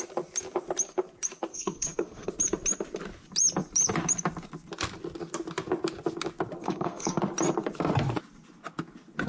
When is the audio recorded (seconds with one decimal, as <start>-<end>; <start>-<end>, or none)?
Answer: 0.0-1.5; 2.3-6.6; 7.2-9.3